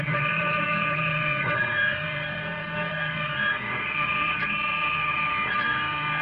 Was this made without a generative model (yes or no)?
no